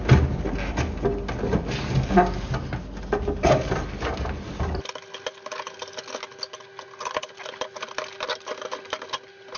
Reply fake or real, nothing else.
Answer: real